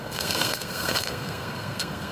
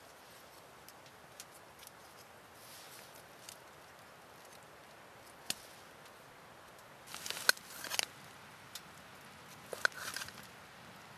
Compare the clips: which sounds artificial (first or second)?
first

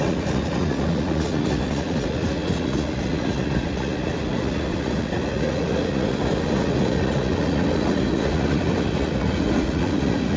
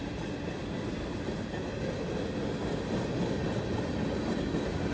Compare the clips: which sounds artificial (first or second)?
first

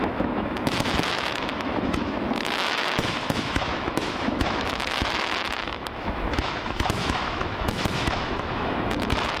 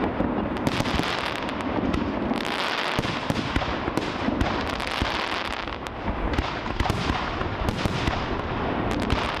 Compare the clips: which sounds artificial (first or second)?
first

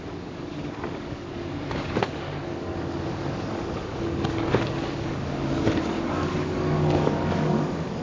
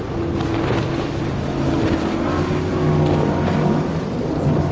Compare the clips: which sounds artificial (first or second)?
first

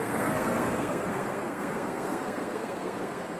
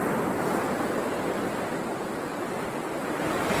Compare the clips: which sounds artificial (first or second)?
first